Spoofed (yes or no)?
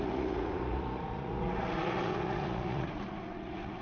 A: yes